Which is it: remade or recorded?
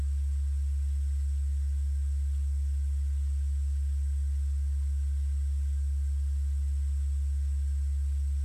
recorded